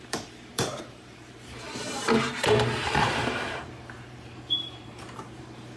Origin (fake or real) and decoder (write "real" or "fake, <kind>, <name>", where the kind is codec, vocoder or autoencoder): fake, vocoder, BigVGAN v2